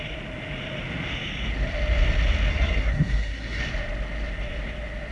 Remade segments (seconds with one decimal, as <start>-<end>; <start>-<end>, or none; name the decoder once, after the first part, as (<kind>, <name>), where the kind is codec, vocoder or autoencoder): 2.5-3.6 (codec, SNAC)